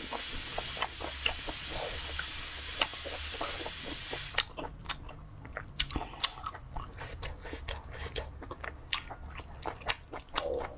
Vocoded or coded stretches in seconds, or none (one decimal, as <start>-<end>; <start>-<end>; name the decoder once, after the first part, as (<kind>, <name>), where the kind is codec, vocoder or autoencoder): none